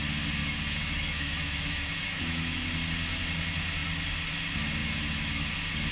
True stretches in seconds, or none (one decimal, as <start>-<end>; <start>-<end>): 0.0-0.4; 2.7-4.8; 5.5-5.9